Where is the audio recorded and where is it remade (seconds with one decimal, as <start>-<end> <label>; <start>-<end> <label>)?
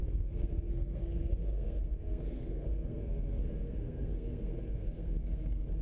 0.0-5.8 remade